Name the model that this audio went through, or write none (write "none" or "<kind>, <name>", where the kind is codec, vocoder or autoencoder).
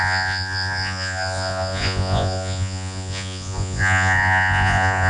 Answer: vocoder, Vocos